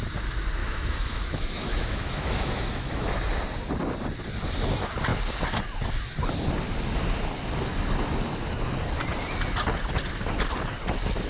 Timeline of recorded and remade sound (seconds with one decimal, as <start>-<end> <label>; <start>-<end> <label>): 0.0-0.6 recorded; 0.6-3.1 remade; 3.1-11.3 recorded